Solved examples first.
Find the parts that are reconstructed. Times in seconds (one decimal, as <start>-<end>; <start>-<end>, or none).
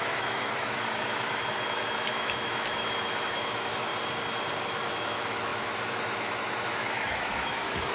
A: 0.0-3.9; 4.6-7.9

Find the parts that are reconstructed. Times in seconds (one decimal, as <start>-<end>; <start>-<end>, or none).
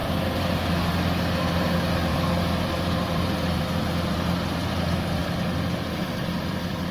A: 0.0-0.6; 2.1-3.8; 5.2-6.9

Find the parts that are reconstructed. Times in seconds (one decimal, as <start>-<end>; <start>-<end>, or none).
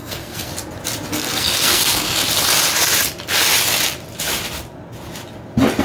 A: 0.0-0.5; 1.1-2.2